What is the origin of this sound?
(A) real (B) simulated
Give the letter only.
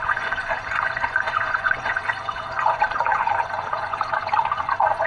B